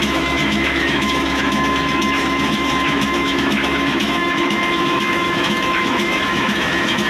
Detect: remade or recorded remade